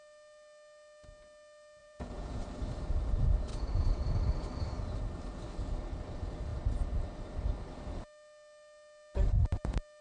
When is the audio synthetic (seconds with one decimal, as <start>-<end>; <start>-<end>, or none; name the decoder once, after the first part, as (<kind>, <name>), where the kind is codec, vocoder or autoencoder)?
1.8-2.4 (vocoder, Vocos); 3.5-4.0